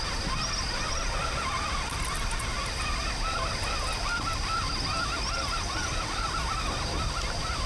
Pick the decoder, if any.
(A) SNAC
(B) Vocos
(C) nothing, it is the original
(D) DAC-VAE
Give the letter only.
C